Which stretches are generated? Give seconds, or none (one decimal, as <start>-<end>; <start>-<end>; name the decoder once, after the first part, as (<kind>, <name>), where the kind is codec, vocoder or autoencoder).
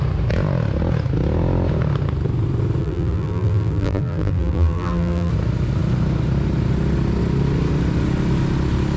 2.8-5.3 (vocoder, BigVGAN v2)